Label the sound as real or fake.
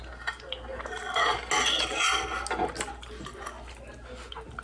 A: real